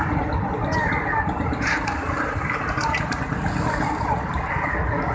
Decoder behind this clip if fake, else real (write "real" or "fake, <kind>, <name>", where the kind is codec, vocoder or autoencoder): real